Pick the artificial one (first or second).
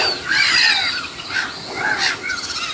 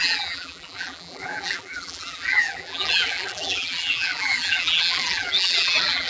second